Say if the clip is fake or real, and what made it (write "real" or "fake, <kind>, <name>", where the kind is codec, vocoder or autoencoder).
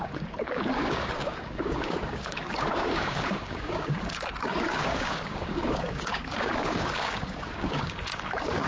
fake, codec, DAC